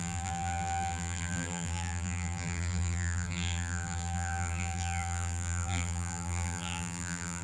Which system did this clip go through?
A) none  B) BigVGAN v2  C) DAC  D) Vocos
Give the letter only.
B